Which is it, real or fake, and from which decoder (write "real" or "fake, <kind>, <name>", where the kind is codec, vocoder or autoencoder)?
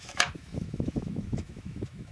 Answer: fake, autoencoder, DAC-VAE